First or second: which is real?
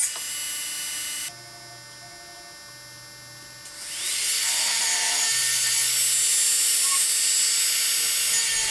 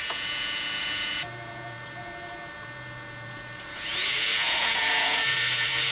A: first